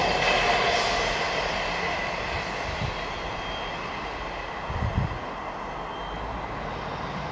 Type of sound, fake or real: real